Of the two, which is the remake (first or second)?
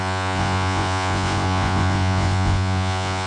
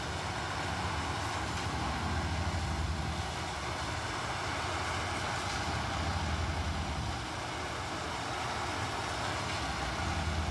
first